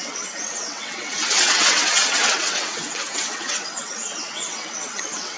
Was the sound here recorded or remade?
remade